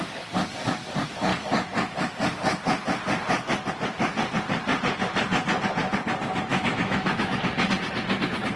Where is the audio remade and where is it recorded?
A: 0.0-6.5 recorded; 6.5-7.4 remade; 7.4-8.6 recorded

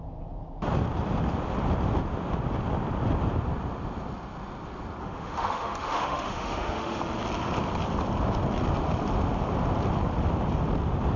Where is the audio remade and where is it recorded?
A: 0.0-5.0 recorded; 5.0-7.0 remade; 7.0-11.2 recorded

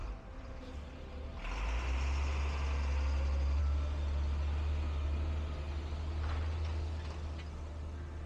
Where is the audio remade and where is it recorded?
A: 0.0-8.3 recorded

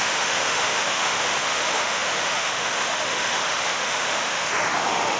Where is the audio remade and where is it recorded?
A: 0.0-5.2 remade

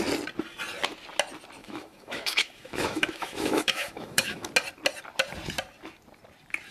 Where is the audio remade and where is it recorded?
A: 0.0-1.6 recorded; 1.6-4.5 remade; 4.5-6.7 recorded

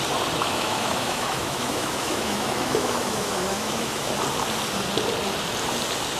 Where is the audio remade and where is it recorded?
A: 0.0-0.4 recorded; 0.4-4.1 remade; 4.1-6.2 recorded